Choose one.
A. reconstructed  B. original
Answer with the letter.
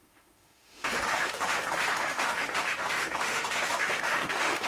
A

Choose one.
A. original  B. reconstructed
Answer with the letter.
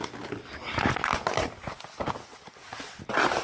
A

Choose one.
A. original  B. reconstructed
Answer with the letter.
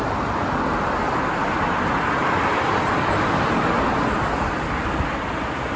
A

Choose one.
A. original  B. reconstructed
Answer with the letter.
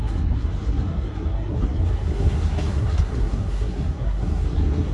B